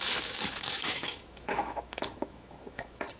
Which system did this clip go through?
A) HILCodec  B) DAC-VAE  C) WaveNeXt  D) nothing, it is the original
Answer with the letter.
B